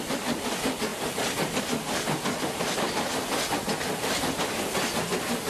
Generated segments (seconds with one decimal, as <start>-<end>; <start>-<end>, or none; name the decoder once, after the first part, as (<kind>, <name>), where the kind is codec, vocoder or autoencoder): none